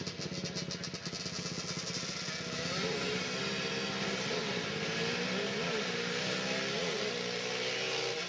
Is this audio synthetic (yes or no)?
no